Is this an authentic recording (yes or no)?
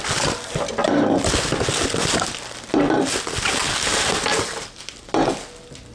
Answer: yes